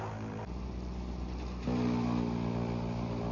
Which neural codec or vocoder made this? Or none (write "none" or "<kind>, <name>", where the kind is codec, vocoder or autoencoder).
none